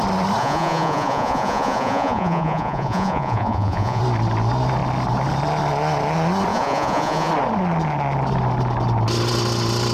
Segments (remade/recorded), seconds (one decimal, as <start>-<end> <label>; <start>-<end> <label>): 0.0-0.4 recorded; 0.4-4.0 remade; 4.0-6.5 recorded; 6.5-7.3 remade; 7.3-9.9 recorded